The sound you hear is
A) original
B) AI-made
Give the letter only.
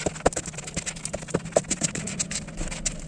A